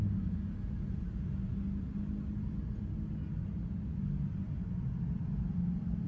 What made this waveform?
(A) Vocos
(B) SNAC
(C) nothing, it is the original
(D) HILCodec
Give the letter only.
C